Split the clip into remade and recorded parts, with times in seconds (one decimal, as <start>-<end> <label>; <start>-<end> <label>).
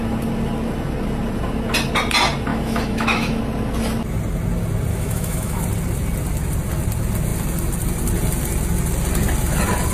0.0-2.5 recorded; 2.5-3.4 remade; 3.4-4.9 recorded; 4.9-5.6 remade; 5.6-9.9 recorded